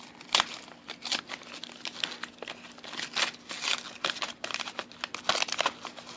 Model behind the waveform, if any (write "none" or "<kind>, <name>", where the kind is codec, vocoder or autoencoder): none